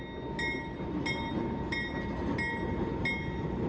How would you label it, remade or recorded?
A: recorded